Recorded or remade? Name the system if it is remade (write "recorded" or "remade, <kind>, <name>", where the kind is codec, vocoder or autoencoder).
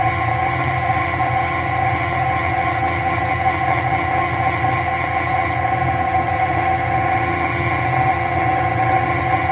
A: remade, vocoder, HiFi-GAN